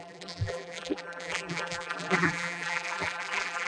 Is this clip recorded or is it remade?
remade